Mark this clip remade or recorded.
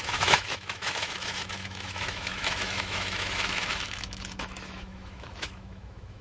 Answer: remade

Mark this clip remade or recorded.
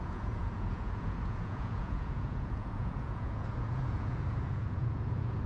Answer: remade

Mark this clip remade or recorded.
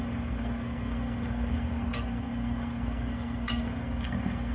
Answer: remade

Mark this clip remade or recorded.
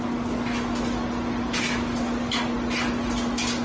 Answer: recorded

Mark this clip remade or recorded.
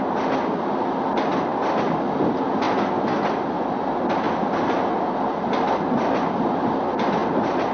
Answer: recorded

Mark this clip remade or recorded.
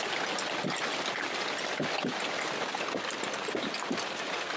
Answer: recorded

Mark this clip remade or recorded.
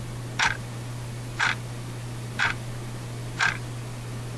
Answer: recorded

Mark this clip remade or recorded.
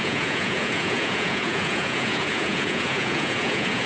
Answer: remade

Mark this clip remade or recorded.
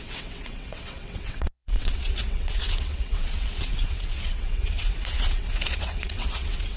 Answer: remade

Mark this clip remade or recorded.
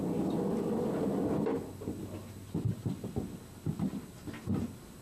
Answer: recorded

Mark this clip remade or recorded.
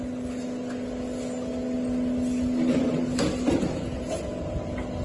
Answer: recorded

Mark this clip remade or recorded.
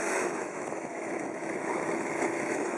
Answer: remade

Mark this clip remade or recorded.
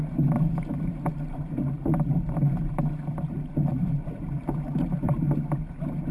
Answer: remade